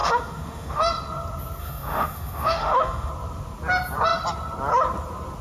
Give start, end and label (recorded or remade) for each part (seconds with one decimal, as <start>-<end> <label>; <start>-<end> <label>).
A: 0.0-0.8 remade; 0.8-1.6 recorded; 1.6-3.1 remade; 3.1-5.4 recorded